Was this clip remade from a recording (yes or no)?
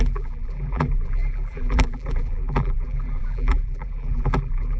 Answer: yes